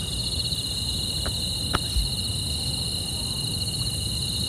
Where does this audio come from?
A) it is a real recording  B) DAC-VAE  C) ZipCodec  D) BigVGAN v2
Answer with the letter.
A